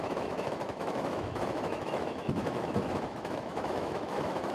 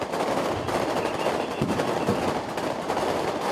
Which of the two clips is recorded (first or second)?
second